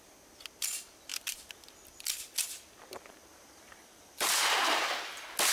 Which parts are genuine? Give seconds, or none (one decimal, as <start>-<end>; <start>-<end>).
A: 0.0-1.1; 1.7-3.3; 4.9-5.5